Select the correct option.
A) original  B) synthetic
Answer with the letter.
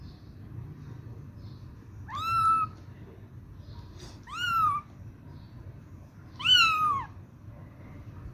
A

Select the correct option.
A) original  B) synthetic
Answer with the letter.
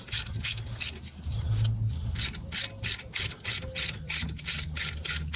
A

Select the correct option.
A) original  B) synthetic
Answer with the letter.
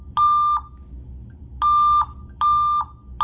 A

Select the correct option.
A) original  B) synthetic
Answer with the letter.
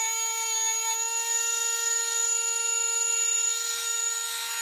B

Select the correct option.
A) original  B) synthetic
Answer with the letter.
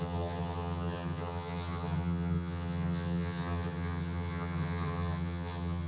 B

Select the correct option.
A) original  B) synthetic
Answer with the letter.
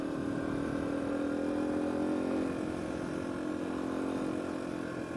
A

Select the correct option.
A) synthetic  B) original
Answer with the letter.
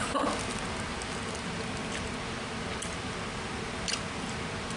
B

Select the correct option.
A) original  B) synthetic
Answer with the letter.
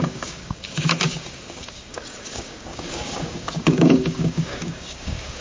B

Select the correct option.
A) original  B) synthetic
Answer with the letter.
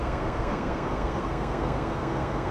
B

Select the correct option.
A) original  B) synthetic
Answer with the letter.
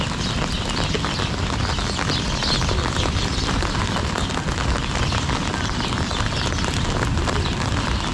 A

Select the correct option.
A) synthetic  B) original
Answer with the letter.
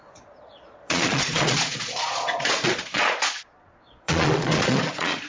A